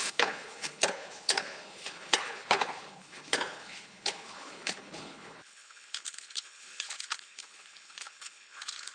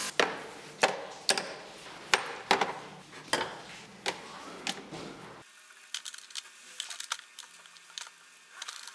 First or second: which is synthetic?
first